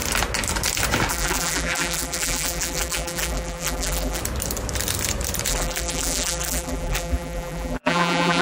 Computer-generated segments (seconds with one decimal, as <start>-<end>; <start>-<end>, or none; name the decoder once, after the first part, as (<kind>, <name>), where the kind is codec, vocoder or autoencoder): 1.1-4.2 (vocoder, BigVGAN v2); 5.5-8.4